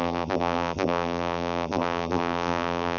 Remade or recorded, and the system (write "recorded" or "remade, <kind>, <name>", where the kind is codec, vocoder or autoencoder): remade, vocoder, BigVGAN v2